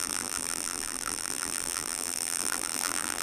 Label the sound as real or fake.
fake